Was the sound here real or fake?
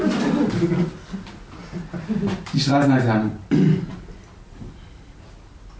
real